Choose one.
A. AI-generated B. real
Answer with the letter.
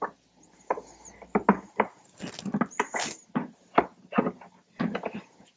B